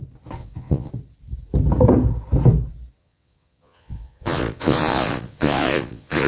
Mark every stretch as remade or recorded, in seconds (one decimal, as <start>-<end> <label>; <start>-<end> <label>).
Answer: 0.0-0.4 recorded; 0.4-0.9 remade; 0.9-3.0 recorded; 3.0-6.3 remade